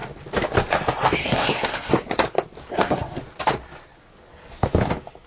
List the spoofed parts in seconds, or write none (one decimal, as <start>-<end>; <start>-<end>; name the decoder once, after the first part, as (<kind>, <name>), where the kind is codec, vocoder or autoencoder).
1.2-1.9 (codec, SNAC); 2.7-3.2